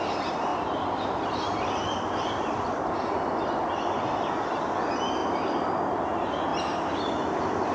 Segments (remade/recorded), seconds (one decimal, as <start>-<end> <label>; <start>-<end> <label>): 0.0-0.5 recorded; 0.5-1.7 remade; 1.7-7.7 recorded